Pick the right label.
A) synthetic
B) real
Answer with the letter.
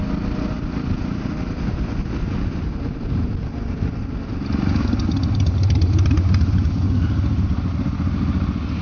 B